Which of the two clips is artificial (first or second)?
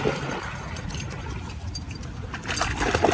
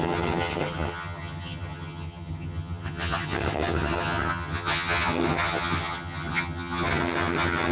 second